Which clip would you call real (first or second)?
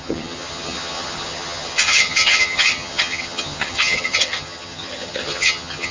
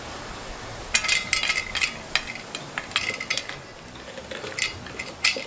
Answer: second